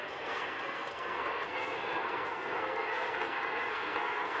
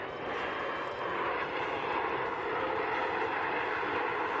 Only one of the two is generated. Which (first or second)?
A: first